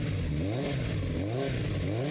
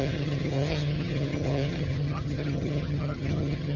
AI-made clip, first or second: second